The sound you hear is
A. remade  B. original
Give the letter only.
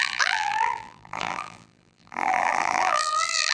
A